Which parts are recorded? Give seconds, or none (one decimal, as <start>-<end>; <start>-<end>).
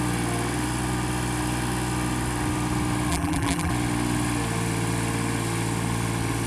0.0-3.1; 3.7-6.5